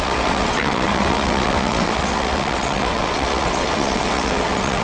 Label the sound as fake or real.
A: fake